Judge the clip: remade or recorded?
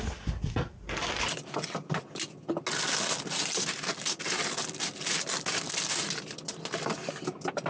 recorded